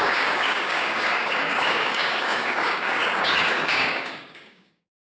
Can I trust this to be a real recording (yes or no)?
no